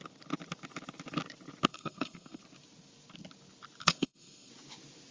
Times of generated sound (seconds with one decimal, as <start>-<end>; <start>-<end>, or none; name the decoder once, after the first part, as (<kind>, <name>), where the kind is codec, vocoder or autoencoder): 1.7-2.4 (codec, SNAC); 3.8-4.5